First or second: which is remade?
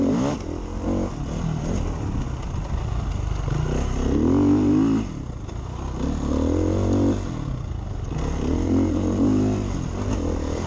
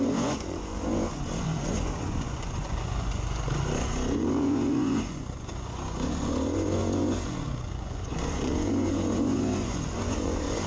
second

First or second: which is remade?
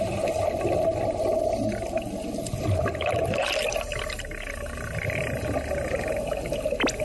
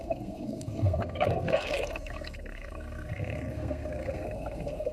second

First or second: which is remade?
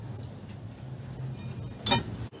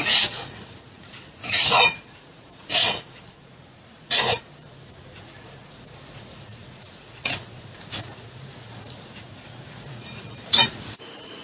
second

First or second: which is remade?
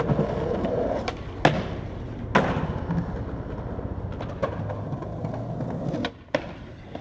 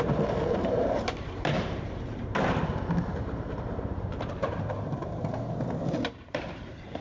second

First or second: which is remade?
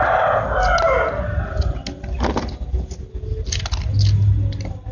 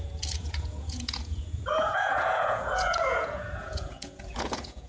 second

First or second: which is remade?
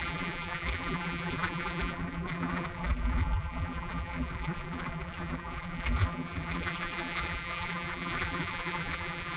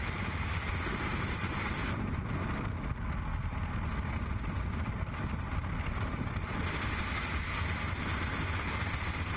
first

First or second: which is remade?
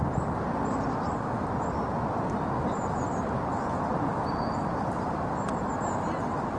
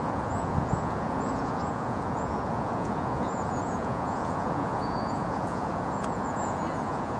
second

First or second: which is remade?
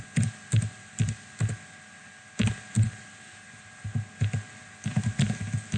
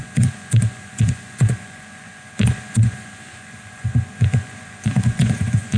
second